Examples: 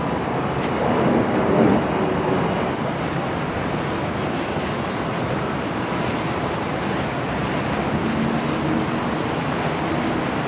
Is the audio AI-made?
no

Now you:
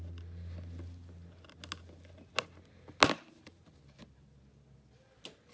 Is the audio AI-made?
no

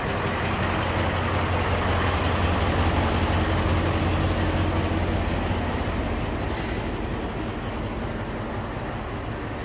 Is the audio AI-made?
no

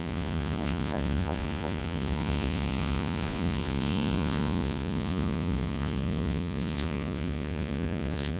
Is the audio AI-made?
yes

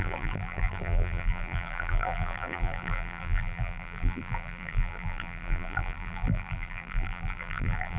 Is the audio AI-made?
yes